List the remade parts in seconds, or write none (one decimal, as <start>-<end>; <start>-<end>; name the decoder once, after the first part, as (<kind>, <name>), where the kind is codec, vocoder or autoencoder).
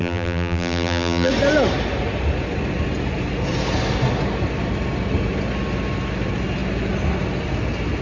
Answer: 0.0-1.3 (vocoder, BigVGAN v2)